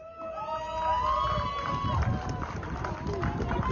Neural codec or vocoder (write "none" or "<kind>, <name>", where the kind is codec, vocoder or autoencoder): none